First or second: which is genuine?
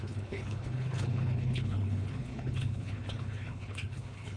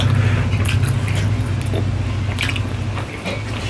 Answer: second